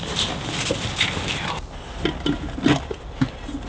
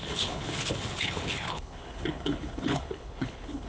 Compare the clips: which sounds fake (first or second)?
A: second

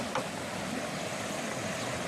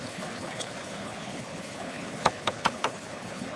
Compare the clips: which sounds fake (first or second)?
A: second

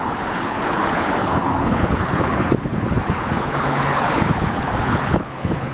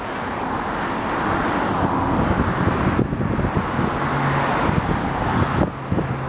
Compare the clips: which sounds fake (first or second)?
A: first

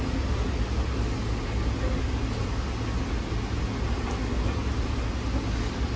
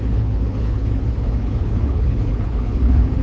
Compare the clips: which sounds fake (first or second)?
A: second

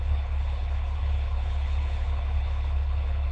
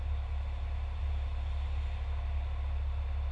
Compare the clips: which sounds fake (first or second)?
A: first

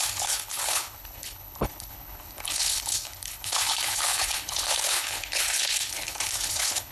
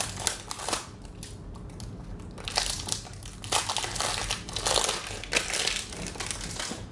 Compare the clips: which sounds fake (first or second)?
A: first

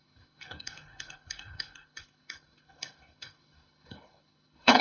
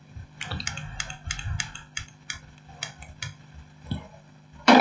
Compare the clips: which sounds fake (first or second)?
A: first